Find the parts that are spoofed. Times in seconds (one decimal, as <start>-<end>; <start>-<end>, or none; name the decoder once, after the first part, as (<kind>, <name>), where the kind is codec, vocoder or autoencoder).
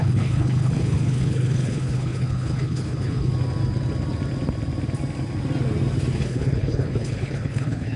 0.0-3.3 (codec, HILCodec); 6.1-8.0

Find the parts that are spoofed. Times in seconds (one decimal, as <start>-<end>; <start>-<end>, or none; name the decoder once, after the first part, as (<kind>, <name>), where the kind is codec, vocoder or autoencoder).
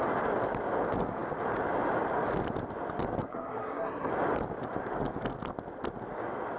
3.2-4.1 (codec, SNAC)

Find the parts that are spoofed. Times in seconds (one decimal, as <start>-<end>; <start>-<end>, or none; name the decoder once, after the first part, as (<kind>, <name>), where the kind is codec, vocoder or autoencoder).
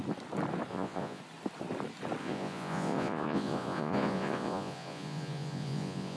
0.7-1.2 (vocoder, Vocos); 2.2-6.2